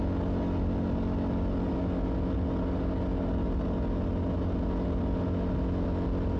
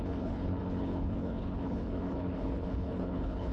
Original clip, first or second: first